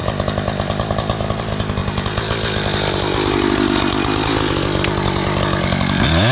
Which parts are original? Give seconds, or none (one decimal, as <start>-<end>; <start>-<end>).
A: 0.0-6.3